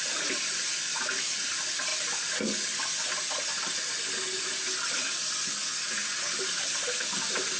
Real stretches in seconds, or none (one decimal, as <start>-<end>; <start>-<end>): 0.0-7.6

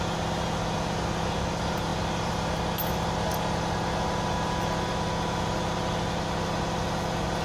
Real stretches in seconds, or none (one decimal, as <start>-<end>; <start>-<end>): 0.0-7.4